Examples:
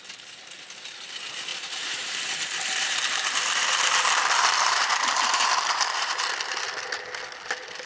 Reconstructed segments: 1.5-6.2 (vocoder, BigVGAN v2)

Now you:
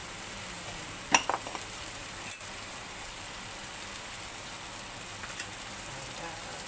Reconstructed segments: 0.8-2.0 (vocoder, BigVGAN v2); 2.7-6.7

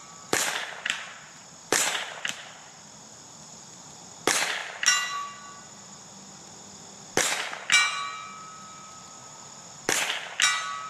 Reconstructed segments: 0.0-4.0 (vocoder, BigVGAN v2)

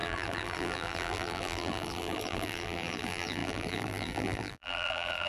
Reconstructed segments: 0.0-5.3 (vocoder, BigVGAN v2)

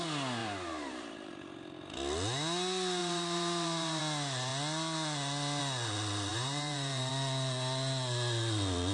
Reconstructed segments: 0.4-1.3 (vocoder, BigVGAN v2); 3.0-4.0; 6.3-7.1

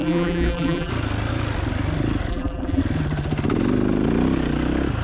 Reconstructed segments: 0.0-0.9 (vocoder, BigVGAN v2); 2.3-2.8

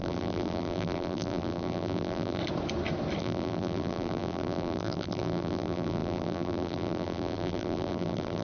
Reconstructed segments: 0.0-2.4 (vocoder, BigVGAN v2); 3.2-8.4

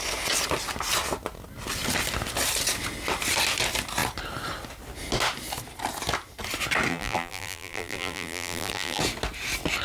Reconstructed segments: 6.9-9.0 (vocoder, BigVGAN v2)